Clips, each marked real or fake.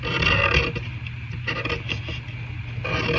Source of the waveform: real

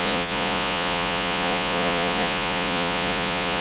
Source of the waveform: fake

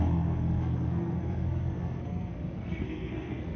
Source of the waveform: fake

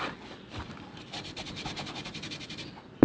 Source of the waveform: real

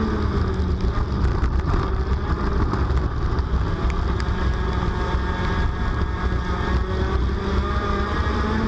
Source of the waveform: real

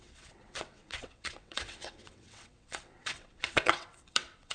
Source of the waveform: fake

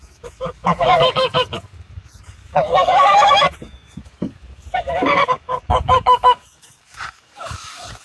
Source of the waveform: fake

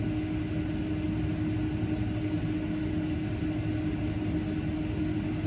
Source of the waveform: real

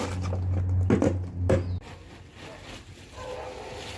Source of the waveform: real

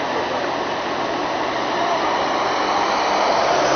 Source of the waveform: real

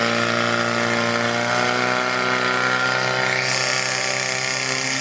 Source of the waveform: real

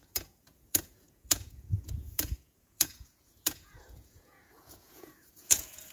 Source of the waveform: fake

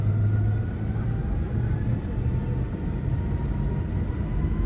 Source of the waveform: real